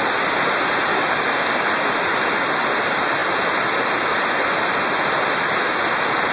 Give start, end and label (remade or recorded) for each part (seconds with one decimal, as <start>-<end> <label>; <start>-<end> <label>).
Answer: 0.0-0.9 recorded; 0.9-1.7 remade; 1.7-6.3 recorded